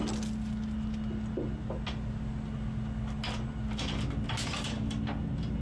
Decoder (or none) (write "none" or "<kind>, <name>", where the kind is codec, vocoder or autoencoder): none